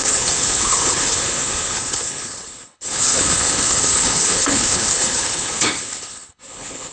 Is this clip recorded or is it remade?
remade